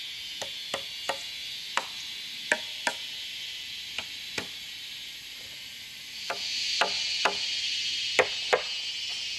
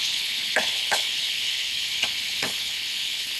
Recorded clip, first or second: first